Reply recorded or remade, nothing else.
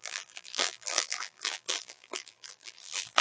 remade